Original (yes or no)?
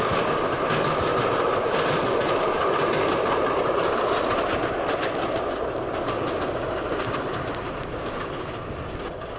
yes